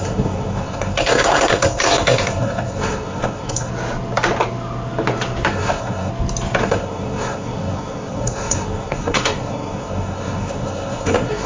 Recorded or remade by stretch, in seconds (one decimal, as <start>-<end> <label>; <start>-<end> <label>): 0.0-3.7 remade; 3.7-5.5 recorded; 5.5-6.1 remade; 6.1-6.6 recorded; 6.6-11.5 remade